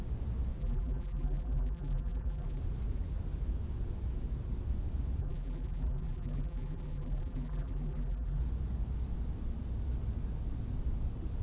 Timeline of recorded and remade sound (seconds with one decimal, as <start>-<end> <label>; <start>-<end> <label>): 0.0-0.6 recorded; 0.6-2.6 remade; 2.6-5.2 recorded; 5.2-8.4 remade; 8.4-11.4 recorded